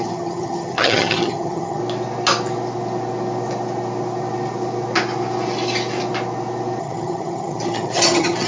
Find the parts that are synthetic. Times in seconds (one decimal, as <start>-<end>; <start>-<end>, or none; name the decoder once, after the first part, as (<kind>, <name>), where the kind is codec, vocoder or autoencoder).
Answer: 0.0-1.8 (vocoder, HiFi-GAN); 6.8-8.5